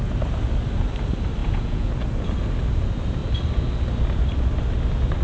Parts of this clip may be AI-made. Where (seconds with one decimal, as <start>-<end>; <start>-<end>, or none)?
1.4-1.9